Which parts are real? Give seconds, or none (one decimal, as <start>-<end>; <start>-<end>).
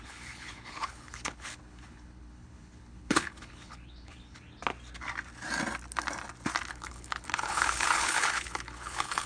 4.6-6.7